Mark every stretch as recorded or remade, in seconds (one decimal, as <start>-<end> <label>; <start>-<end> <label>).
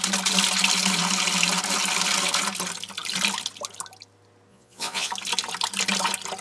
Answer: 0.0-4.5 recorded; 4.5-5.1 remade; 5.1-6.4 recorded